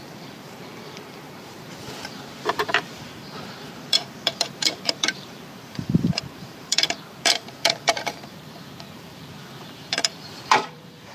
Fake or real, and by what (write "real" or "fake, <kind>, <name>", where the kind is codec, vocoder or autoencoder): fake, vocoder, BigVGAN v2